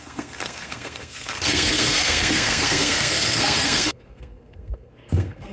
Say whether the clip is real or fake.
fake